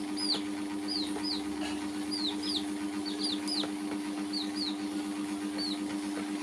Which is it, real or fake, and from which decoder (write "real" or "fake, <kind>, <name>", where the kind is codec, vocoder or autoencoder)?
real